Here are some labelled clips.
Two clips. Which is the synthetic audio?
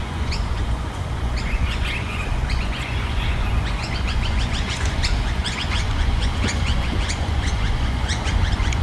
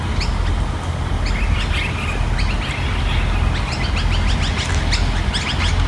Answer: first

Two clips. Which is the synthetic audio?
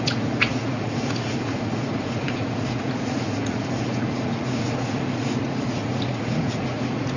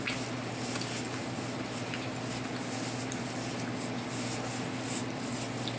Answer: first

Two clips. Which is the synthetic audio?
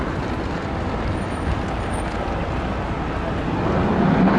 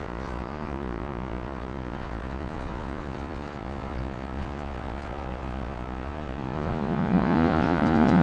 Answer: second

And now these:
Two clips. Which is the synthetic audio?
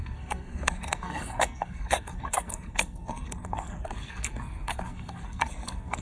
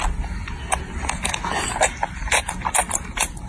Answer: first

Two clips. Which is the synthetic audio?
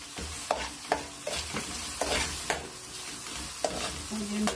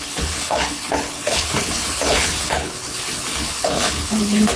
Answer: second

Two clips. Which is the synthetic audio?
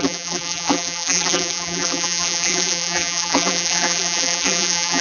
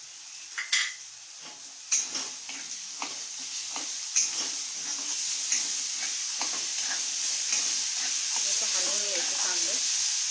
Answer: first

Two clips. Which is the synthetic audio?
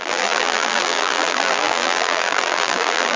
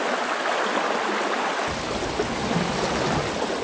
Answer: first